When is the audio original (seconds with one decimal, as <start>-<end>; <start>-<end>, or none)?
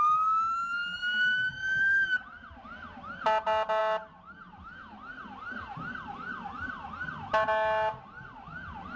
0.0-1.0; 2.2-9.0